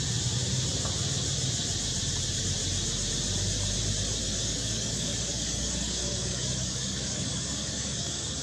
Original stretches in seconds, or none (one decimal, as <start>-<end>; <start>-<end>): 0.0-4.2